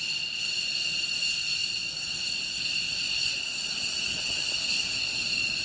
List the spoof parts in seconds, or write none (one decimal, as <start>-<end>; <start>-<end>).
1.6-5.0